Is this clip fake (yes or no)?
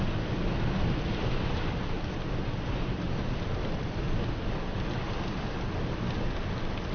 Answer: no